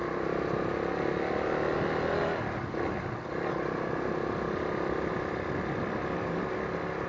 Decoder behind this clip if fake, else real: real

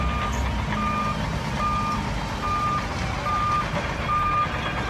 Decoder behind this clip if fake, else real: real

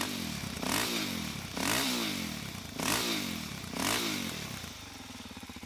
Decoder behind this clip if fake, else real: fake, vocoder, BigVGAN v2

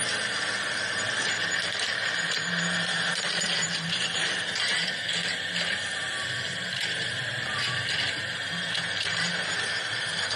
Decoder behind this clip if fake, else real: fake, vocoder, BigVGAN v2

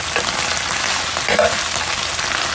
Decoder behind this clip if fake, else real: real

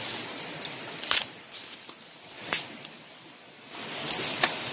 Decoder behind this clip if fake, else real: fake, vocoder, BigVGAN v2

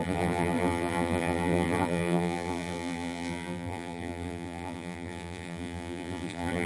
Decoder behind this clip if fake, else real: fake, vocoder, BigVGAN v2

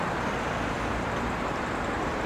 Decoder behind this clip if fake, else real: fake, vocoder, BigVGAN v2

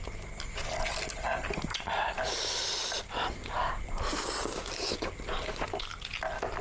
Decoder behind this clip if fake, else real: real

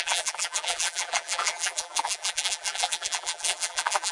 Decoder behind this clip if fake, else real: fake, vocoder, BigVGAN v2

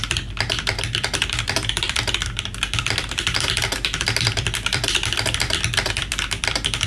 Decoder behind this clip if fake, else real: fake, vocoder, BigVGAN v2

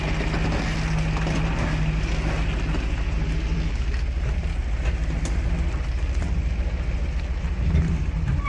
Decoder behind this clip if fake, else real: real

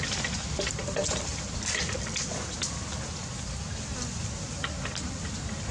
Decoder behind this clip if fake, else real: fake, vocoder, BigVGAN v2